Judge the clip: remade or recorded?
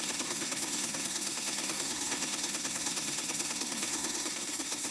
remade